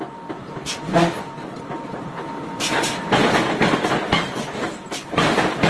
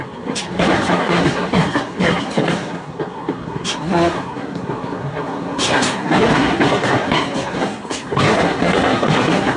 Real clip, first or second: first